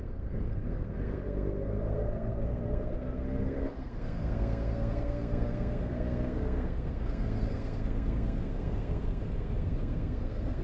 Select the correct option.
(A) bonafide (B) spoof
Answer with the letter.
B